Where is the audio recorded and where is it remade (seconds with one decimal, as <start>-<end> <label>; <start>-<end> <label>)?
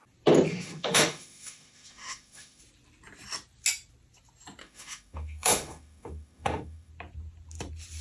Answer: 0.0-0.5 recorded; 0.5-2.6 remade; 2.6-4.6 recorded; 4.6-6.9 remade; 6.9-8.0 recorded